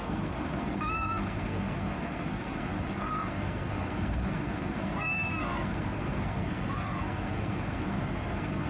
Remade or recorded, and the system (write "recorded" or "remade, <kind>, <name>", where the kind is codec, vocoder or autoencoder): remade, codec, SNAC